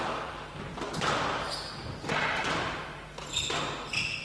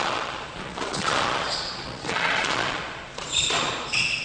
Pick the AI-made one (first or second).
second